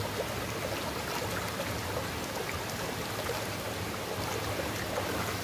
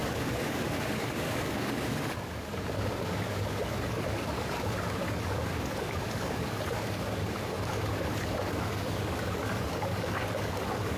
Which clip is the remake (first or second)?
second